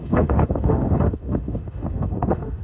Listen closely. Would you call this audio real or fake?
fake